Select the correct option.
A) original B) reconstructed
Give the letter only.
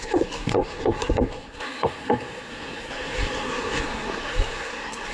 B